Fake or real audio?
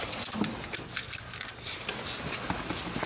real